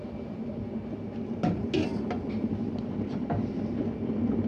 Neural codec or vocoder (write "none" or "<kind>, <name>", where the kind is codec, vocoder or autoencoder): none